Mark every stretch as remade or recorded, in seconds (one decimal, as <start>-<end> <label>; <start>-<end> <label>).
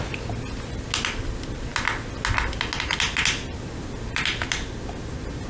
0.0-5.5 recorded